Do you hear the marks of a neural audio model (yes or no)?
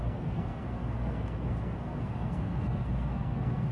yes